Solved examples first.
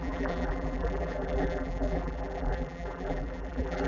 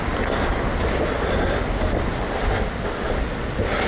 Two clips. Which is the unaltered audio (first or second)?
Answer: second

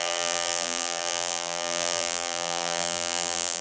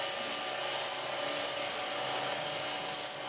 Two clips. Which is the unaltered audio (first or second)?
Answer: second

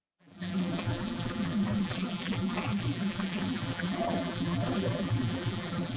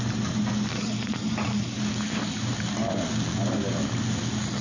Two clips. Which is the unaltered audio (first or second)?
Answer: second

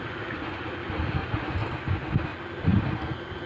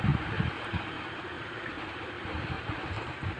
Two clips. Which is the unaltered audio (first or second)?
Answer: first